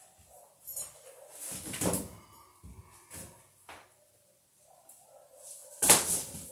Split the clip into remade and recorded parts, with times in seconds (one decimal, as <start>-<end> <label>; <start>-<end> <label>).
0.0-6.5 recorded